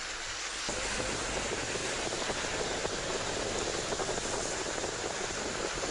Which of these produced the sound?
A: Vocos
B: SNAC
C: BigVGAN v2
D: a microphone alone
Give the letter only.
D